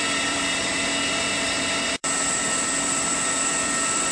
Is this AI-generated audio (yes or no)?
yes